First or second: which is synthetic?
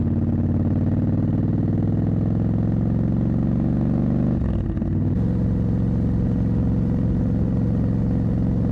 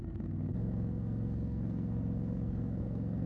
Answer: second